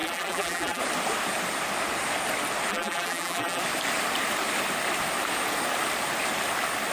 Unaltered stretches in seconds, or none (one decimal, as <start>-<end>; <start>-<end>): 0.8-2.7; 3.6-6.9

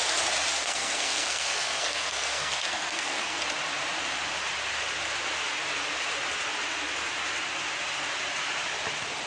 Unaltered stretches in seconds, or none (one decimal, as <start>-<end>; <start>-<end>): 0.0-0.6; 3.4-9.3